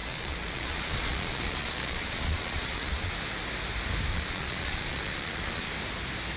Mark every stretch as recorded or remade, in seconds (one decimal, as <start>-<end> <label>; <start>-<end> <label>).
0.0-3.1 remade; 3.1-4.1 recorded; 4.1-5.7 remade; 5.7-6.4 recorded